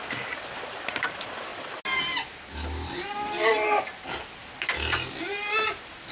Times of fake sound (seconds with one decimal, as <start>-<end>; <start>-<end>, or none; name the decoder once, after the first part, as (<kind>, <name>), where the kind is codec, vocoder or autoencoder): 0.0-1.5 (vocoder, BigVGAN v2); 5.2-6.1